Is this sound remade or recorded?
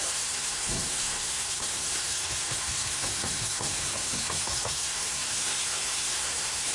remade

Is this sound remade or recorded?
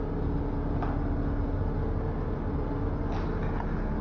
recorded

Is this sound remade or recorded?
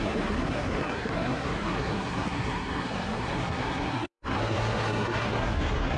remade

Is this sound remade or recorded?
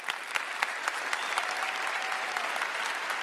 recorded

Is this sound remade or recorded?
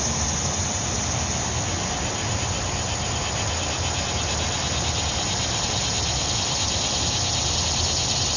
recorded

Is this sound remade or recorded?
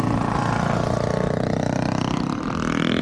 recorded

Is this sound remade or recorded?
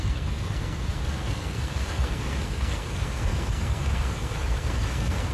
remade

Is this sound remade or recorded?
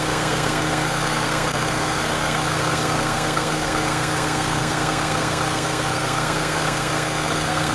remade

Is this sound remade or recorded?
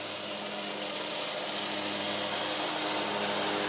recorded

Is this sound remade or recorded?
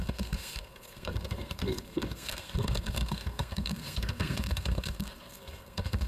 remade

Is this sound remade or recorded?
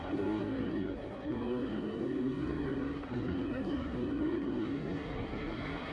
remade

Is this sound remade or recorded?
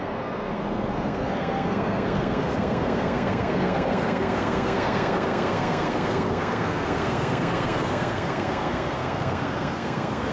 remade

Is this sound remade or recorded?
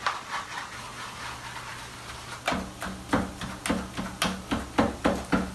recorded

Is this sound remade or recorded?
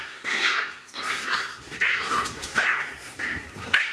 remade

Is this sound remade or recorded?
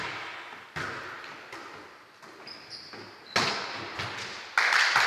recorded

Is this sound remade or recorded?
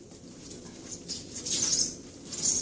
recorded